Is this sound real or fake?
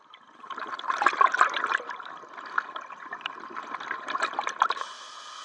real